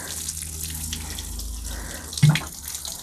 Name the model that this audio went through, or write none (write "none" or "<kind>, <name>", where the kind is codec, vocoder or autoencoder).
none